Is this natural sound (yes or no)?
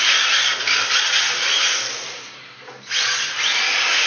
yes